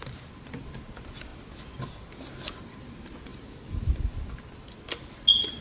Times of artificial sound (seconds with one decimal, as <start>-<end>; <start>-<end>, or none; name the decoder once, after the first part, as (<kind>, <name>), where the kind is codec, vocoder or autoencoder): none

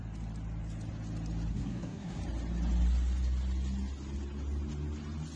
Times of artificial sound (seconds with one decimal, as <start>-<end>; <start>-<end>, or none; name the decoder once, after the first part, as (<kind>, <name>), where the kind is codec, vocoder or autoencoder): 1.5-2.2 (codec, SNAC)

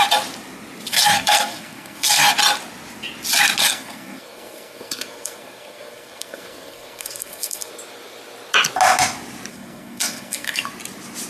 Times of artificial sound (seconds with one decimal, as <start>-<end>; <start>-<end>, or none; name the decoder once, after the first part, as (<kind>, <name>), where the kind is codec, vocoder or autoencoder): 0.9-2.3 (codec, SNAC); 3.6-7.7; 9.5-10.7

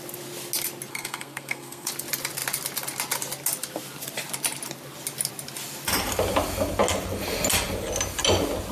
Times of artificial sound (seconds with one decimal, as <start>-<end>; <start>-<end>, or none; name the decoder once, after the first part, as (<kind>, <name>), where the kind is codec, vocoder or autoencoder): 0.9-1.9 (codec, SNAC)

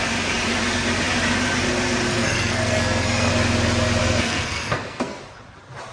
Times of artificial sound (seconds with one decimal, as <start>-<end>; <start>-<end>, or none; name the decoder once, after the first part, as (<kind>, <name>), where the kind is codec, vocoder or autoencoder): 2.1-3.3 (codec, SNAC); 4.0-5.2

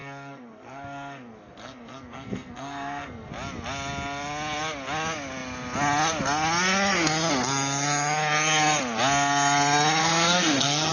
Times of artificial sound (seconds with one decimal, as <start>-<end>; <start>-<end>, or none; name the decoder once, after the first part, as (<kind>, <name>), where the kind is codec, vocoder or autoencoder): 0.0-3.3 (codec, SNAC); 10.0-10.9